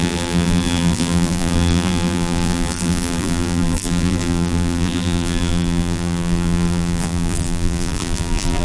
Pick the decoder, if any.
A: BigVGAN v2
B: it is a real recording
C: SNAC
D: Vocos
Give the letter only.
A